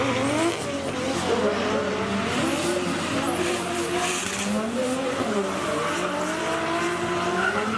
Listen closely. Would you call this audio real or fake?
real